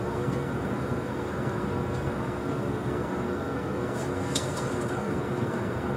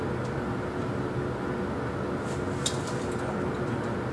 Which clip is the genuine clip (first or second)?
second